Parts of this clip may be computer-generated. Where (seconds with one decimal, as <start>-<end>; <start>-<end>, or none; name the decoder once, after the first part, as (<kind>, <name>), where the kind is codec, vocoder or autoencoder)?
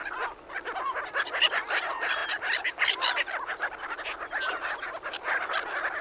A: none